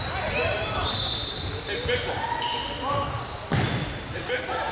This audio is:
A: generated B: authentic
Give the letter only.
B